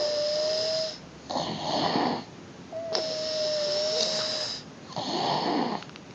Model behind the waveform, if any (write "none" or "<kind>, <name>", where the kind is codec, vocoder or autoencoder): none